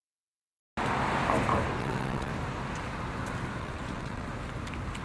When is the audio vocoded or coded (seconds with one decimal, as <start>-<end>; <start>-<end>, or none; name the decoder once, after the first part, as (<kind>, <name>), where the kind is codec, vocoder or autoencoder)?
0.0-0.6 (vocoder, WaveNeXt); 1.8-2.3; 3.6-4.3